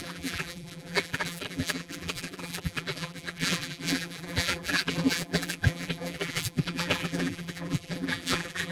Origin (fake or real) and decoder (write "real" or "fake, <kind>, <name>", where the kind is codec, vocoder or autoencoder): fake, vocoder, BigVGAN v2